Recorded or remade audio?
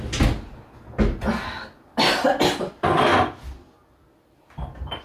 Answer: recorded